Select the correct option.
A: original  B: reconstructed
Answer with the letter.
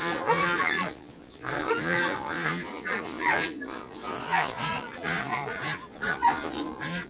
B